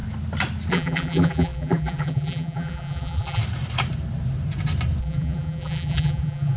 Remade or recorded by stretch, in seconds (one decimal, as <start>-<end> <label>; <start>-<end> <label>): 0.0-0.7 recorded; 0.7-3.4 remade; 3.4-5.0 recorded; 5.0-6.6 remade

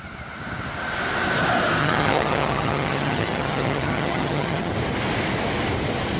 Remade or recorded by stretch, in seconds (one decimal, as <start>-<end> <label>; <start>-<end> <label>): 0.0-1.8 recorded; 1.8-4.7 remade; 4.7-6.2 recorded